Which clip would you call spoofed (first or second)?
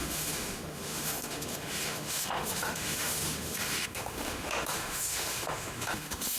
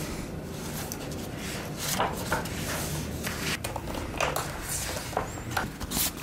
first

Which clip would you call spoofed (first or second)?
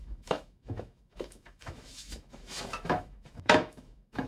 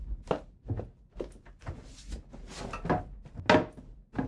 first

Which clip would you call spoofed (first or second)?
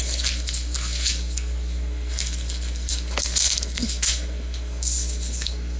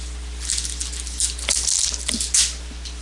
first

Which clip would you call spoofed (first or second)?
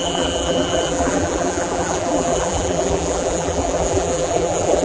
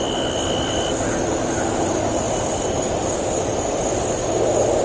first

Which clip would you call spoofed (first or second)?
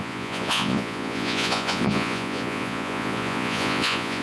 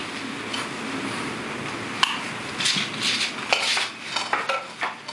first